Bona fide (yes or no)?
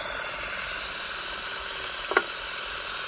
yes